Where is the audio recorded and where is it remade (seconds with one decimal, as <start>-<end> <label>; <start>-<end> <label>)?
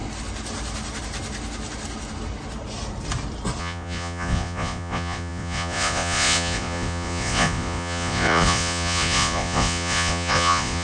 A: 0.0-3.6 recorded; 3.6-10.8 remade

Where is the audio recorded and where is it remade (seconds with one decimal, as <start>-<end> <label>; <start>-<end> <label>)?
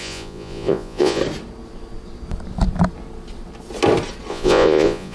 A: 0.0-1.2 remade; 1.2-4.3 recorded; 4.3-5.1 remade